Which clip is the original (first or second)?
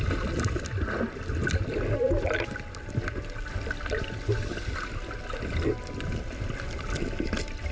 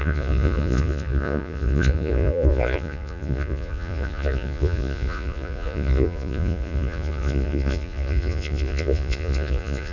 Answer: first